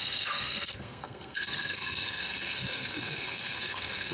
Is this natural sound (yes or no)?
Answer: no